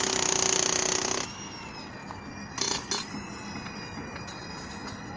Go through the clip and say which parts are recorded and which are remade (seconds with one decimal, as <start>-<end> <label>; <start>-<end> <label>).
0.0-5.2 recorded